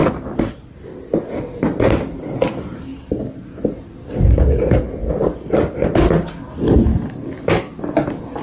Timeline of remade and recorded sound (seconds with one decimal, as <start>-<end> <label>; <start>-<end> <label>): 0.0-4.0 recorded; 4.0-4.6 remade; 4.6-6.9 recorded; 6.9-7.8 remade; 7.8-8.4 recorded